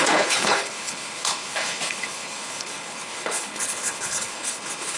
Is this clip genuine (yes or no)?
no